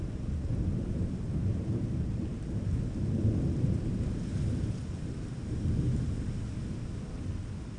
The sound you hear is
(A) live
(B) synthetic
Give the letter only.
A